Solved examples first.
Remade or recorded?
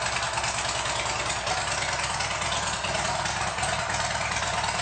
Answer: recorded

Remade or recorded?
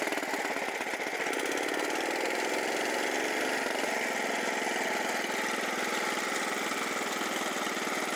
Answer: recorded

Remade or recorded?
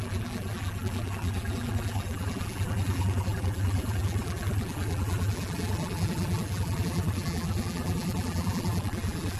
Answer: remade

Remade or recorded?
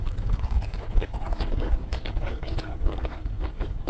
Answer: remade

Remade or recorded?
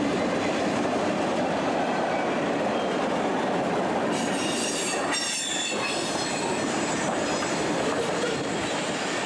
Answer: remade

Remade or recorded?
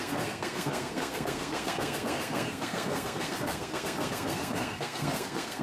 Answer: remade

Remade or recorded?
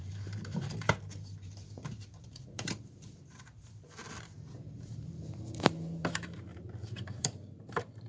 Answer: remade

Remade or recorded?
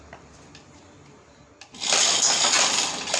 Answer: recorded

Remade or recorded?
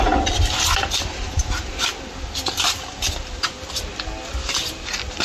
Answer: recorded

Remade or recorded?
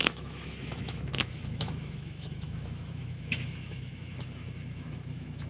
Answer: remade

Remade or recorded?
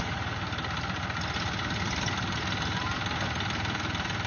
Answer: recorded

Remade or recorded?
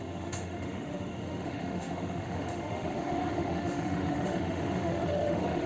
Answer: remade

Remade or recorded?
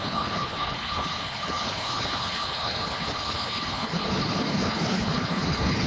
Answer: remade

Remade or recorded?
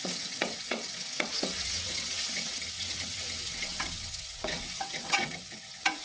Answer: remade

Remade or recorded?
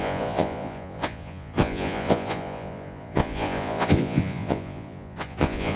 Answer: remade